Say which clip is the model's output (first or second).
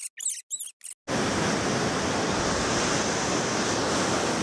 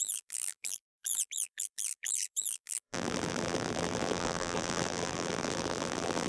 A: second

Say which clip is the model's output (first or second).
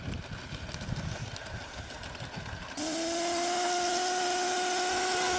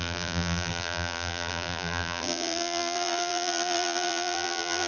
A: second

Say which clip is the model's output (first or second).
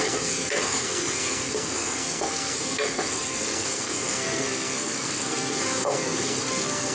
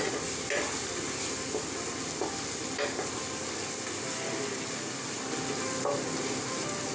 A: first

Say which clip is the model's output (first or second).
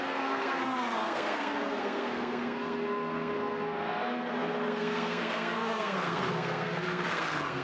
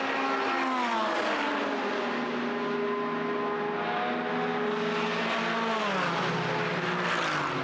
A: first